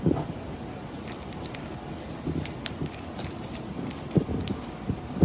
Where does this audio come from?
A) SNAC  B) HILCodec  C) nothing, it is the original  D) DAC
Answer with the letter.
C